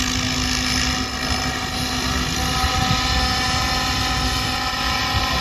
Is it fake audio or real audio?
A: real